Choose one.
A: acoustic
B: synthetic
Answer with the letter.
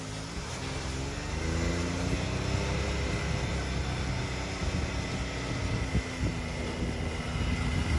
A